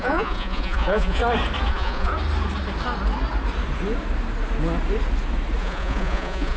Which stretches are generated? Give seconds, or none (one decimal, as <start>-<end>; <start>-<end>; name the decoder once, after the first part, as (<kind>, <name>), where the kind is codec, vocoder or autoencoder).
0.0-1.2 (vocoder, Vocos); 1.7-2.1; 5.6-6.6